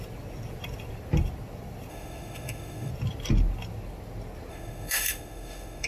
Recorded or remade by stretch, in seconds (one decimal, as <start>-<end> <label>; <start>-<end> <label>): 0.0-1.9 recorded; 1.9-2.9 remade; 2.9-4.5 recorded; 4.5-5.9 remade